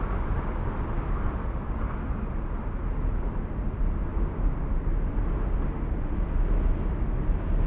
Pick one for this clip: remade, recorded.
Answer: recorded